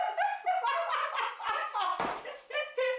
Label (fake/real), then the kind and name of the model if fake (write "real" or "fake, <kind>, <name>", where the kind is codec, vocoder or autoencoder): real